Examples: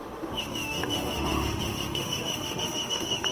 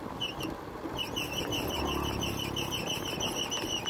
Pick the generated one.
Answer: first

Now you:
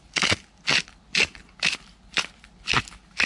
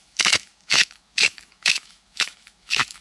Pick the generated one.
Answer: second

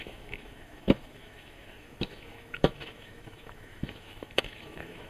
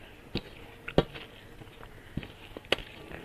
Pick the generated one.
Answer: first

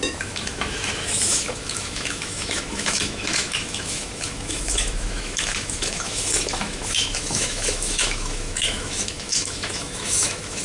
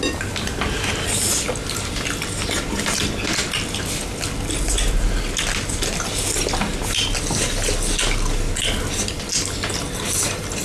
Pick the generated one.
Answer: first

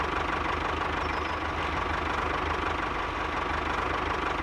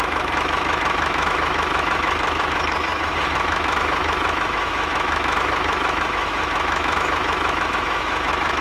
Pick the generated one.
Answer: second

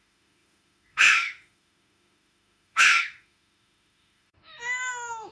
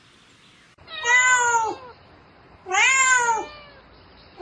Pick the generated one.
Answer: first